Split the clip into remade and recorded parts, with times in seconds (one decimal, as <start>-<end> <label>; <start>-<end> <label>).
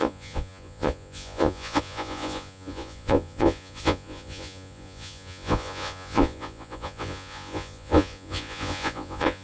0.0-9.4 remade